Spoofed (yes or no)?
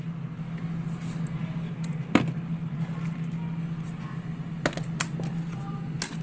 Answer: no